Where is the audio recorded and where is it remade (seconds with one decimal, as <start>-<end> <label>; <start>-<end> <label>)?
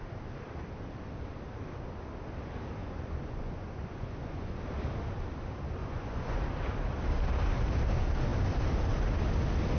0.0-2.8 recorded; 2.8-4.6 remade; 4.6-5.8 recorded; 5.8-6.4 remade; 6.4-9.8 recorded